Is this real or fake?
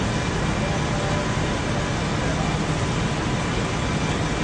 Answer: real